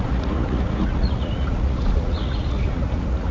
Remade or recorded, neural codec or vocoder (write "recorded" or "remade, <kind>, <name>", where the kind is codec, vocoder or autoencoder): remade, vocoder, Vocos